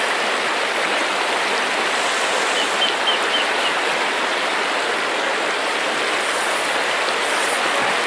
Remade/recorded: recorded